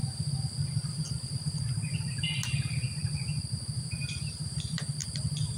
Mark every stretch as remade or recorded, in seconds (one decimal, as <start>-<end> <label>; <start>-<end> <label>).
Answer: 0.0-0.9 recorded; 0.9-2.8 remade; 2.8-3.8 recorded; 3.8-5.6 remade